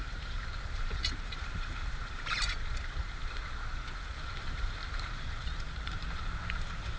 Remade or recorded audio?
remade